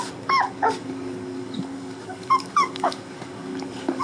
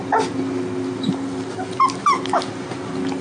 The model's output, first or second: first